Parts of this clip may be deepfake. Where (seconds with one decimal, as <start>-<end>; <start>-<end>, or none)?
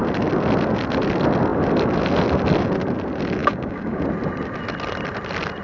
3.4-4.0